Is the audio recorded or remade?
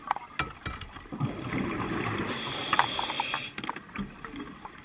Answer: recorded